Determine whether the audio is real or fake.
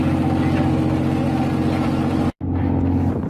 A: real